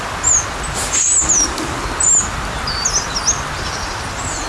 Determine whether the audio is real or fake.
real